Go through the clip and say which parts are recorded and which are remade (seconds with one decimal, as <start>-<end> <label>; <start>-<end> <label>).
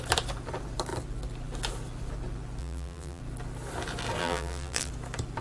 0.0-2.6 recorded; 2.6-3.2 remade; 3.2-4.2 recorded; 4.2-4.9 remade; 4.9-5.4 recorded